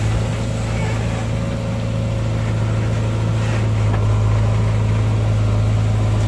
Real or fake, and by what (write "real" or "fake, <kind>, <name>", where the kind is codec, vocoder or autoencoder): real